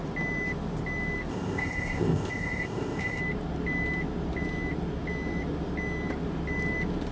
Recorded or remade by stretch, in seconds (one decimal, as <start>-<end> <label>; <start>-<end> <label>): 0.0-1.3 recorded; 1.3-3.2 remade; 3.2-7.1 recorded